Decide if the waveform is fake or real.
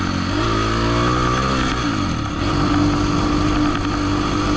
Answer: real